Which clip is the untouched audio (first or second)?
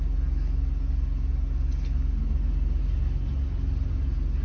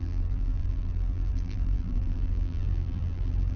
first